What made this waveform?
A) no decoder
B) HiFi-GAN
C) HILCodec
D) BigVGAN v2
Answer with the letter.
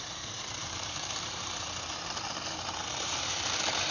D